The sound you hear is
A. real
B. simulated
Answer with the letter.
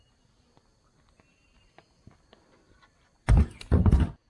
A